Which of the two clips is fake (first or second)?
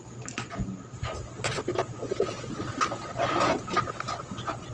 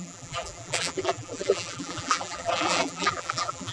second